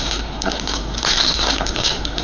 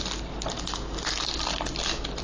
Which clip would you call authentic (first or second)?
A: second